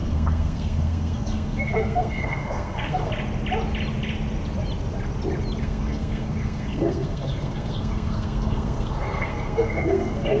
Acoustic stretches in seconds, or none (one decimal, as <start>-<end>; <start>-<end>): 3.1-5.6